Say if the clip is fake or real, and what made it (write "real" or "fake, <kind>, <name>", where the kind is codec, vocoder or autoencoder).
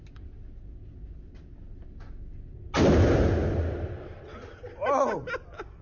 real